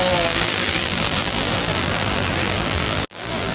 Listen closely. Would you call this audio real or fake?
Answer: fake